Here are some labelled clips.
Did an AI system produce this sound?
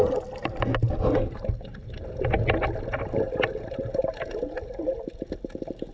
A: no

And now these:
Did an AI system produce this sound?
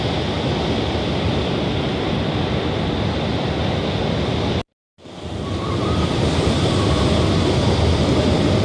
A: no